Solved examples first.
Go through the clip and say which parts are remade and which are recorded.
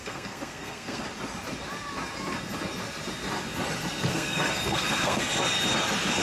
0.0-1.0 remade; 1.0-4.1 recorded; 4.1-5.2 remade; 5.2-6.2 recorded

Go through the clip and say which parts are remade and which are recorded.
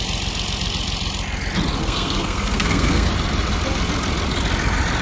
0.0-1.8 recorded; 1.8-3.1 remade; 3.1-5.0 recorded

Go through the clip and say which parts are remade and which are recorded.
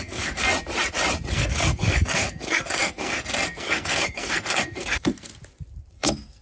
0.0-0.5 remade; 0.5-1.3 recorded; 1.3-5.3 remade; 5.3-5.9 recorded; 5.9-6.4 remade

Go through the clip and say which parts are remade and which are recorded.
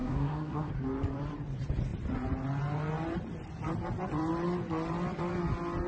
0.0-0.7 remade; 0.7-5.9 recorded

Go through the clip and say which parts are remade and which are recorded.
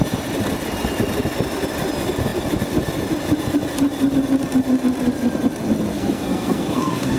0.0-5.9 recorded; 5.9-7.2 remade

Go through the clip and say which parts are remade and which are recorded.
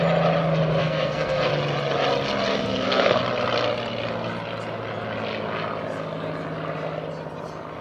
0.0-0.8 recorded; 0.8-1.5 remade; 1.5-2.5 recorded; 2.5-3.2 remade; 3.2-7.8 recorded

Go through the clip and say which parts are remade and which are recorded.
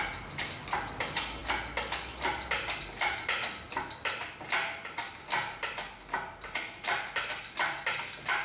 0.0-8.4 recorded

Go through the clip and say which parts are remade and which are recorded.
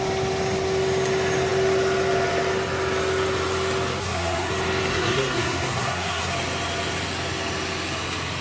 0.0-4.0 recorded; 4.0-4.5 remade; 4.5-4.9 recorded; 4.9-6.3 remade; 6.3-8.4 recorded